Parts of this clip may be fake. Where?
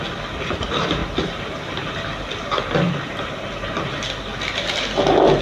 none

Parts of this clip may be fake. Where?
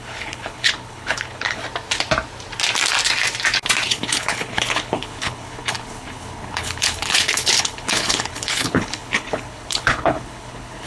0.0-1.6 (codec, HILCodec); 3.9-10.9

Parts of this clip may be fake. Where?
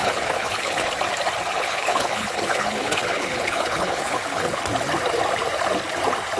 0.0-0.9 (codec, HILCodec); 1.5-4.6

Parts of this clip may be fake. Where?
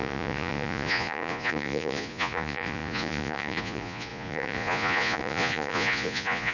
0.0-6.5 (vocoder, Vocos)